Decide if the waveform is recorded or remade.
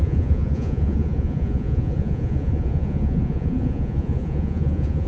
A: remade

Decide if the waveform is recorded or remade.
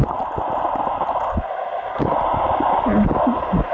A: recorded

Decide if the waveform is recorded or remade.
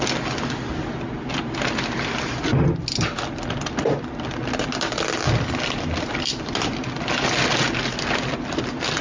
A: recorded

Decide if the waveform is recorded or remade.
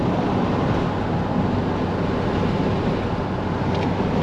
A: recorded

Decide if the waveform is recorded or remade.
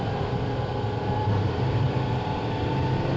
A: remade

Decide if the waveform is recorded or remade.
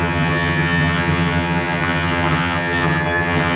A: remade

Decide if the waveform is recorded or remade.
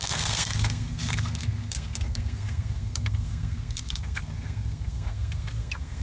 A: remade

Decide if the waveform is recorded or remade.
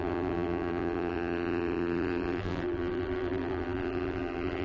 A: remade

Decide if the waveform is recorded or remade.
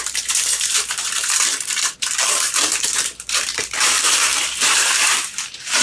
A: remade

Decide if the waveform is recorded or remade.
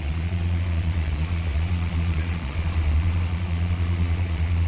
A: remade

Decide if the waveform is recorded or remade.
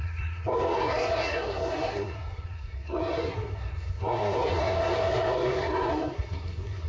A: remade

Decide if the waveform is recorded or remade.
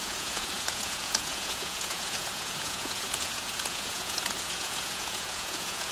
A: remade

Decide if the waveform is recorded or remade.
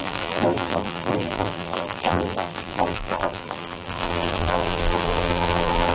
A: remade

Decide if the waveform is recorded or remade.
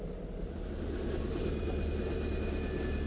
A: recorded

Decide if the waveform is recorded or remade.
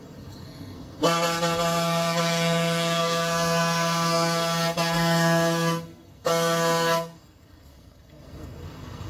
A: remade